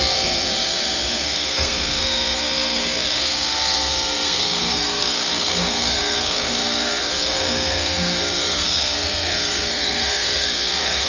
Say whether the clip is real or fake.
fake